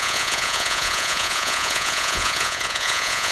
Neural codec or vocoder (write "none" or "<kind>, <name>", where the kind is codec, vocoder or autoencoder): vocoder, Vocos